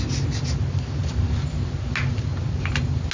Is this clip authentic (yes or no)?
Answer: yes